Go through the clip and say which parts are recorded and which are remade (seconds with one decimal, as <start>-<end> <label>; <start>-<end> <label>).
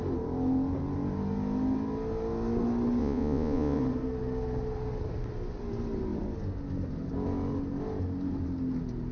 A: 0.0-3.0 recorded; 3.0-3.8 remade; 3.8-9.1 recorded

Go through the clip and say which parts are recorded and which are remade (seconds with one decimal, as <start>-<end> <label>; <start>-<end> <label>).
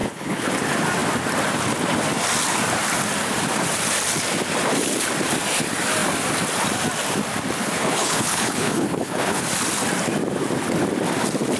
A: 0.0-0.5 remade; 0.5-7.6 recorded; 7.6-9.4 remade; 9.4-11.6 recorded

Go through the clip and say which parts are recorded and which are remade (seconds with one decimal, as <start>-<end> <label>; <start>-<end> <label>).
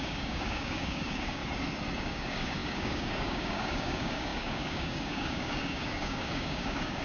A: 0.0-1.4 remade; 1.4-2.0 recorded; 2.0-7.0 remade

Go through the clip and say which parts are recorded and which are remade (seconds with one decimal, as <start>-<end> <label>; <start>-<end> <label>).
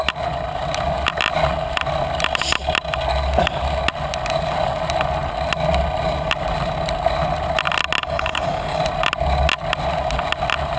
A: 0.0-8.0 recorded; 8.0-8.8 remade; 8.8-10.8 recorded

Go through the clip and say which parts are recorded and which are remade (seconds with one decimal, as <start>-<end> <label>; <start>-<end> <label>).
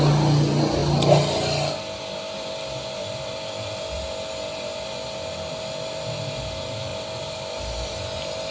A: 0.0-8.5 recorded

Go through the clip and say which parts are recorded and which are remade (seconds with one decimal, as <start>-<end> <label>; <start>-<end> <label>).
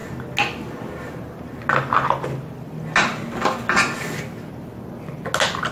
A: 0.0-5.7 recorded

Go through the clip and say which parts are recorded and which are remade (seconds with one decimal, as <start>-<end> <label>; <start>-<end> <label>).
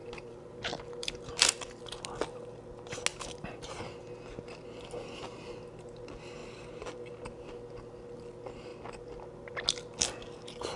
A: 0.0-1.8 remade; 1.8-3.1 recorded; 3.1-3.8 remade; 3.8-10.8 recorded